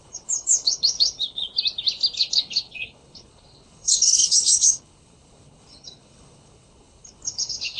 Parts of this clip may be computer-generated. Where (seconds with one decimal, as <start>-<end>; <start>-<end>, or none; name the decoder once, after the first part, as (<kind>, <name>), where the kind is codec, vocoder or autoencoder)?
0.0-1.5 (codec, HILCodec); 2.2-7.8

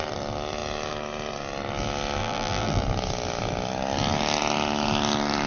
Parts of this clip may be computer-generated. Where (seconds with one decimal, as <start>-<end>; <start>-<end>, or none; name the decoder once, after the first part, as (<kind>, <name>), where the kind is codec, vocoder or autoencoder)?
2.2-2.8 (vocoder, BigVGAN v2)